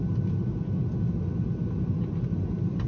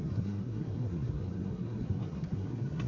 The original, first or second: first